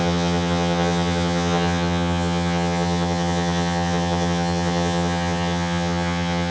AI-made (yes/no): yes